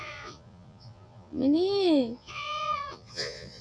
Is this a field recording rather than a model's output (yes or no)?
no